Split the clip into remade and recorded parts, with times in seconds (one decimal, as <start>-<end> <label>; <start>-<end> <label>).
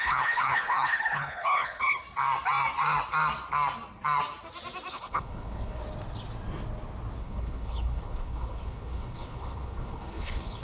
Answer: 0.0-2.0 remade; 2.0-4.9 recorded; 4.9-5.8 remade; 5.8-7.2 recorded; 7.2-10.6 remade